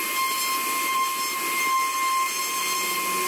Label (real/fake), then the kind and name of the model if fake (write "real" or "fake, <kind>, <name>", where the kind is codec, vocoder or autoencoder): real